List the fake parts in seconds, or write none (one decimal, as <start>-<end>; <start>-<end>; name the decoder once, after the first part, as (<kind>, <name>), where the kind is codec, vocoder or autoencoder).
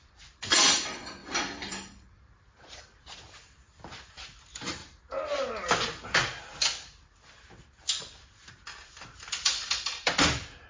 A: 0.0-4.8 (vocoder, BigVGAN v2); 8.5-10.7